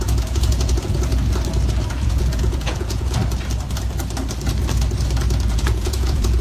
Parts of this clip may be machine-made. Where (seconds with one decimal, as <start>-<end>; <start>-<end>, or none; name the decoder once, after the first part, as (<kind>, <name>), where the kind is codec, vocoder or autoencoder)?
0.0-1.1 (vocoder, Vocos); 1.9-3.2; 5.5-6.4